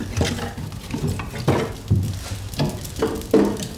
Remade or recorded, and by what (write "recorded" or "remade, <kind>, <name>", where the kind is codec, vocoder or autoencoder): recorded